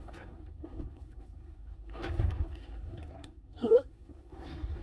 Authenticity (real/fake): fake